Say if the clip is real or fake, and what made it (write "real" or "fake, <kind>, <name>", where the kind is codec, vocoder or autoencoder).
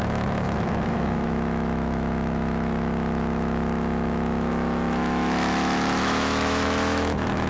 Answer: fake, autoencoder, DAC-VAE